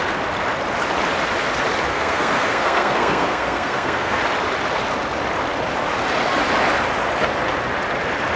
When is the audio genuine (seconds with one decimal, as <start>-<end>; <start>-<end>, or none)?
0.0-1.9; 4.2-8.4